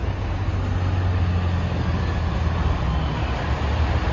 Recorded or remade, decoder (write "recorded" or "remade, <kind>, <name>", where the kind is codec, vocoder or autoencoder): recorded